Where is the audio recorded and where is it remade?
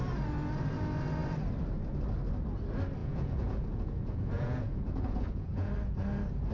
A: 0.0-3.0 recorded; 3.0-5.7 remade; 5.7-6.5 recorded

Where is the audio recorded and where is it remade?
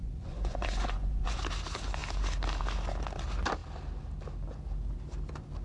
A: 0.0-1.4 remade; 1.4-5.6 recorded